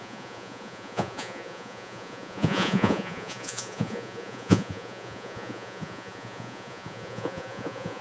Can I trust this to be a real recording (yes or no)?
no